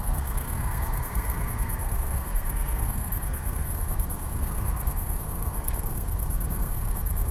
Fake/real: fake